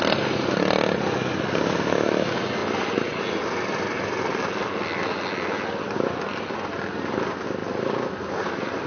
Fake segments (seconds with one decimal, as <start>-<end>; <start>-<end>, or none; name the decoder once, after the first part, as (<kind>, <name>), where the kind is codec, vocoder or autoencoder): none